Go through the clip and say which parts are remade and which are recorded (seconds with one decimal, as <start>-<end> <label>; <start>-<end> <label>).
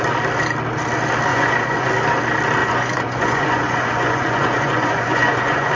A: 0.0-1.3 recorded; 1.3-1.9 remade; 1.9-2.6 recorded; 2.6-5.7 remade